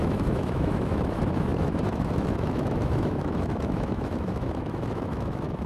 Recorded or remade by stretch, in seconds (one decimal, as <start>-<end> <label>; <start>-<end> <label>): 0.0-5.7 remade